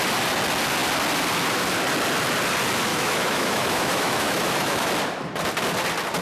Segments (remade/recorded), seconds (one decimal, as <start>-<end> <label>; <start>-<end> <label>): 0.0-2.9 recorded; 2.9-4.9 remade; 4.9-6.2 recorded